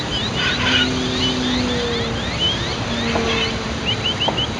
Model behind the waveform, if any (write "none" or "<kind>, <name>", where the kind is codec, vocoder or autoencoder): none